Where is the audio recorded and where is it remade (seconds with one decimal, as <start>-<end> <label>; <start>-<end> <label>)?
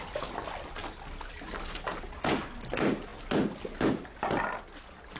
0.0-5.2 recorded